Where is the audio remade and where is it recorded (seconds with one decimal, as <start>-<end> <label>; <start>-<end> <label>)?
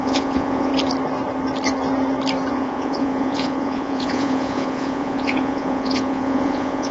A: 0.0-0.7 remade; 0.7-2.5 recorded; 2.5-6.9 remade